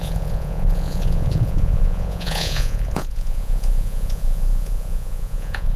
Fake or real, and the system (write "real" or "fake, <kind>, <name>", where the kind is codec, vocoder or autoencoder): fake, vocoder, Vocos